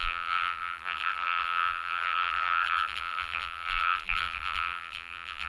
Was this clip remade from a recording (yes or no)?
yes